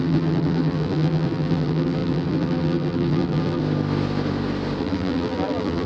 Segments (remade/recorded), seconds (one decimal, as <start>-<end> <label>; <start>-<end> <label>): 0.0-3.6 remade; 3.6-4.8 recorded; 4.8-5.9 remade